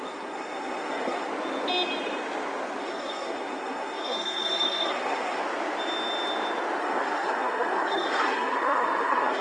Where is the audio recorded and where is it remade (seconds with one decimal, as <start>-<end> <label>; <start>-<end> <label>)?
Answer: 0.0-1.3 remade; 1.3-2.8 recorded; 2.8-5.4 remade; 5.4-6.8 recorded; 6.8-9.4 remade